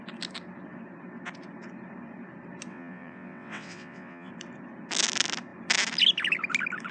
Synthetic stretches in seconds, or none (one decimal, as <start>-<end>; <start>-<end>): 2.7-4.3